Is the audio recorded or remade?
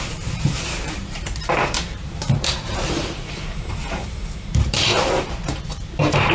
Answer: remade